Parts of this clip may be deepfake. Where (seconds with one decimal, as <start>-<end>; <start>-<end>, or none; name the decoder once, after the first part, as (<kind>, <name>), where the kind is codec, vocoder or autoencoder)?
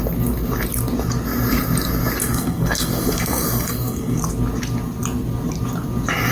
2.2-4.2 (codec, SNAC)